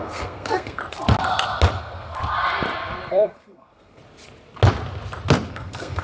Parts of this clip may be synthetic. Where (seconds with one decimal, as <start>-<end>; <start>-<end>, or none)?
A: 0.0-0.8; 1.8-2.2; 3.1-4.0; 5.5-6.0